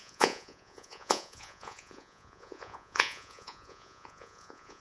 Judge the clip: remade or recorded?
remade